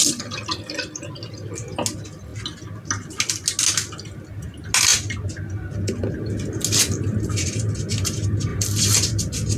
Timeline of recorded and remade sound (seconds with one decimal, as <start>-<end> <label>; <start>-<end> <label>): 0.0-8.5 recorded; 8.5-9.6 remade